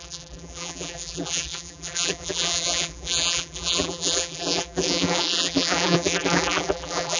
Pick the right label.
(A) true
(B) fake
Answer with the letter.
B